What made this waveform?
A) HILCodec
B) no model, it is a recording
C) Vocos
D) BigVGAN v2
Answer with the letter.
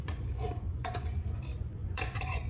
C